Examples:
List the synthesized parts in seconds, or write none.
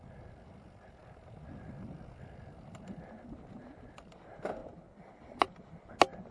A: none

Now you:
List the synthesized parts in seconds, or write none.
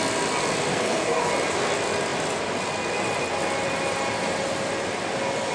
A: 0.7-1.3 (codec, SNAC)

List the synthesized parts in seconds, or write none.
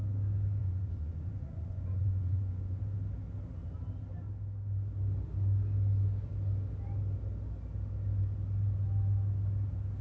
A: 0.6-2.8 (vocoder, Vocos)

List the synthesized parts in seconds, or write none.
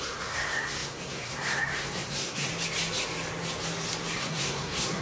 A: 0.0-2.5 (codec, SNAC); 4.2-5.0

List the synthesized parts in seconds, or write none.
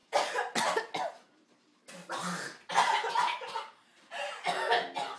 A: none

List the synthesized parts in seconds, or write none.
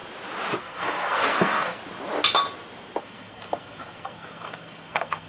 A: 0.6-1.8 (codec, SNAC); 3.0-5.3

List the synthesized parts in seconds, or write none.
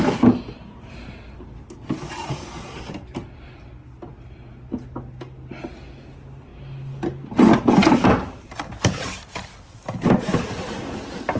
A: none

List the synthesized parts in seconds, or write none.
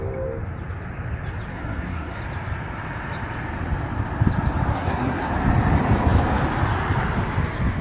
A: 1.5-2.2 (codec, SNAC); 4.7-5.3